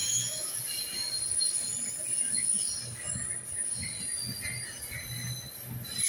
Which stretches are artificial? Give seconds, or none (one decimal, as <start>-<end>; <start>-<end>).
0.0-0.6